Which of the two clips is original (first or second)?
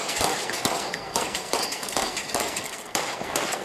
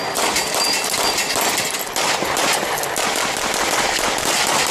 second